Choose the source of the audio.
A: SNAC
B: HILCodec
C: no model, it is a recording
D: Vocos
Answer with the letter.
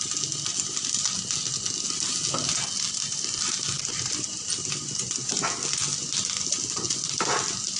C